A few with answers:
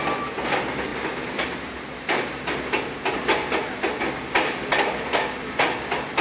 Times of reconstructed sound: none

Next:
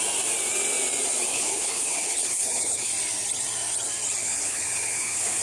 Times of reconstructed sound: 1.3-2.9 (codec, HILCodec); 4.2-5.4

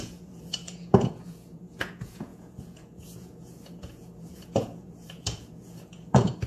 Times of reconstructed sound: 0.0-6.5 (vocoder, Vocos)

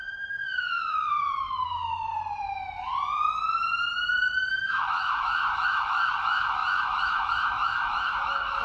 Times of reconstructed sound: 0.0-2.1 (autoencoder, DAC-VAE); 4.5-8.6

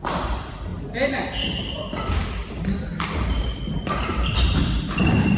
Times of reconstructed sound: none

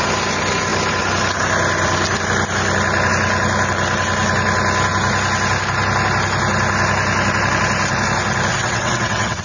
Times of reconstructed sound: 8.5-9.4 (vocoder, WaveNeXt)